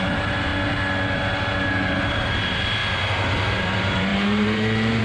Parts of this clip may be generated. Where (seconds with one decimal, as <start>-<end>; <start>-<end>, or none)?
0.0-0.5; 2.1-2.8; 3.6-5.0